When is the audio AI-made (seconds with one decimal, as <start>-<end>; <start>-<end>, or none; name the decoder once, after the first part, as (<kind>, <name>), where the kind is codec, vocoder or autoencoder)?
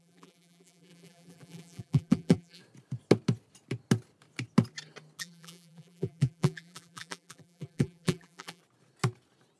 0.0-2.6 (vocoder, BigVGAN v2); 5.2-8.6